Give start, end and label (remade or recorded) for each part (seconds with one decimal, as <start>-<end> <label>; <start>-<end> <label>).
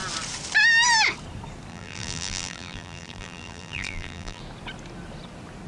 0.0-1.7 recorded; 1.7-4.4 remade; 4.4-5.7 recorded